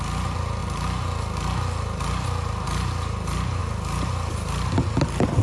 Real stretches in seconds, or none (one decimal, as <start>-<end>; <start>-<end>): 0.0-5.4